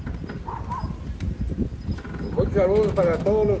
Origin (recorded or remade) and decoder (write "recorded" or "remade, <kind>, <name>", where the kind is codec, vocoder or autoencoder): recorded